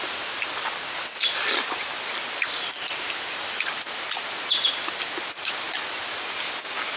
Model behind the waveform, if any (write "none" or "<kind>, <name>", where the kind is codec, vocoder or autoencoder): none